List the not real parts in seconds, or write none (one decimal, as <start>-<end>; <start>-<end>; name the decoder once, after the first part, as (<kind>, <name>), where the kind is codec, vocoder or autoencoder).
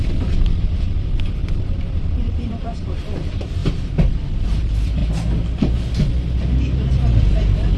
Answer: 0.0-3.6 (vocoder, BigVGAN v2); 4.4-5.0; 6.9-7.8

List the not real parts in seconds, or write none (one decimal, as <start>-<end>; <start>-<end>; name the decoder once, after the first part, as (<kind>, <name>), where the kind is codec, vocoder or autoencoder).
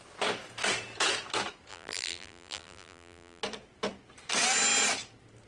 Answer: 1.7-3.4 (vocoder, BigVGAN v2)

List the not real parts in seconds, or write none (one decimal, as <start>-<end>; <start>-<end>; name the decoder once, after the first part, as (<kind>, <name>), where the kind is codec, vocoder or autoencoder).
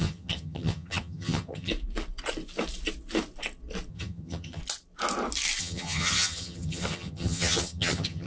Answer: 0.0-1.7 (vocoder, HiFi-GAN); 3.9-4.6; 5.6-8.3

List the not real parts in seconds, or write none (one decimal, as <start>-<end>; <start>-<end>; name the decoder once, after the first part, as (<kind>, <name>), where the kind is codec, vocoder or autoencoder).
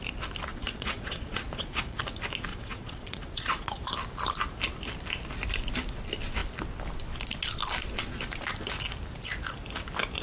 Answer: 0.5-2.0 (vocoder, Vocos); 2.5-3.8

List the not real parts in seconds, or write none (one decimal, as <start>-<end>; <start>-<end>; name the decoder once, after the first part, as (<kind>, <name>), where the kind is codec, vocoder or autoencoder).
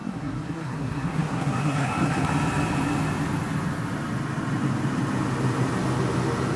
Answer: 0.0-2.3 (codec, SNAC)